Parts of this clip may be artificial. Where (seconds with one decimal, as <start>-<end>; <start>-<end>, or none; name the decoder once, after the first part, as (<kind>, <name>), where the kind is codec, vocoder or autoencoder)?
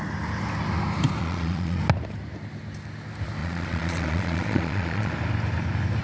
1.2-1.8 (vocoder, Vocos); 3.4-5.1